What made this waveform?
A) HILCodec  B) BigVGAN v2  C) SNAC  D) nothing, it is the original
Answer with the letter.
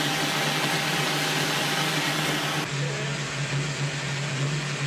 D